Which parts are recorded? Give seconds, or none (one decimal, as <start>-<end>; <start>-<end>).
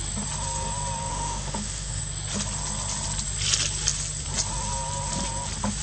0.0-1.1; 2.0-5.8